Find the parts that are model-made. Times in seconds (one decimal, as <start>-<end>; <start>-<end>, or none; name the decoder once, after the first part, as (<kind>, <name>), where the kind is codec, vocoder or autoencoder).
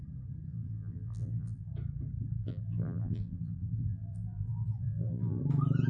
0.5-1.7 (vocoder, BigVGAN v2); 2.4-5.4